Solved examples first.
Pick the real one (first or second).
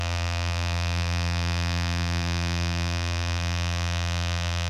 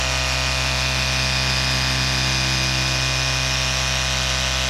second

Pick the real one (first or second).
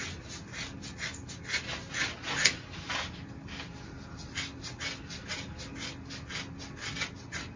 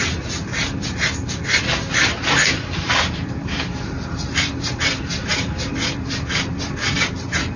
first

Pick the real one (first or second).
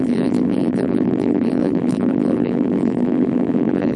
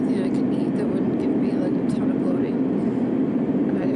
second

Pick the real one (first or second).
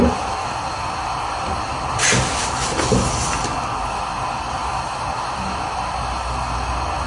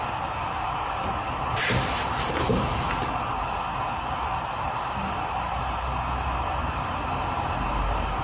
first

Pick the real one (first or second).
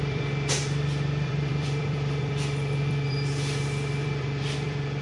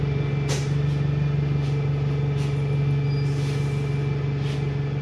second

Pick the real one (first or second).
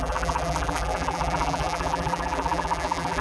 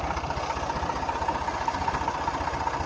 second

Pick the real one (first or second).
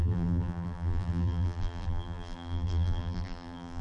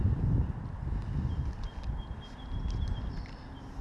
second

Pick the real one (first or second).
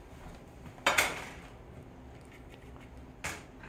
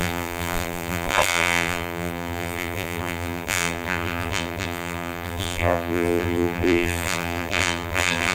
first